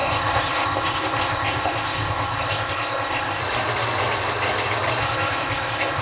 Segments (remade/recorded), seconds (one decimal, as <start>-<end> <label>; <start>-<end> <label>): 0.0-3.4 remade; 3.4-5.0 recorded; 5.0-6.0 remade